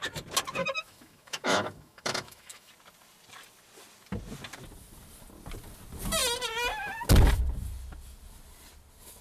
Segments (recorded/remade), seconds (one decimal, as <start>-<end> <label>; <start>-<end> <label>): 0.0-0.6 recorded; 0.6-2.7 remade; 2.7-9.2 recorded